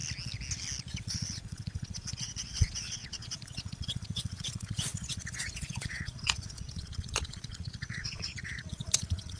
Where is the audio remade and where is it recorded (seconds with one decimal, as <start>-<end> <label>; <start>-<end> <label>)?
0.0-1.0 recorded; 1.0-9.4 remade